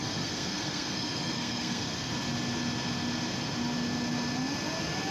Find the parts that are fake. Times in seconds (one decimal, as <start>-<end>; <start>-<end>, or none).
0.0-2.1